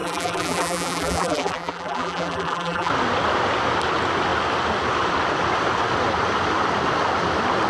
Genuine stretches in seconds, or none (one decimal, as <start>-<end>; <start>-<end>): 2.9-7.7